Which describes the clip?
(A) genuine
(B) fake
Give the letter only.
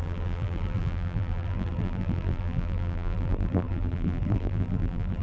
B